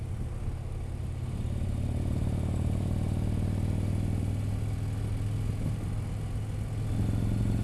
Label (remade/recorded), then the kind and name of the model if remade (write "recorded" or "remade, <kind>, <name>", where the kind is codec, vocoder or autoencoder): recorded